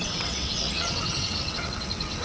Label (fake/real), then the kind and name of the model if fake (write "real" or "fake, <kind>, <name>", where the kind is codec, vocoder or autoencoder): fake, vocoder, WaveNeXt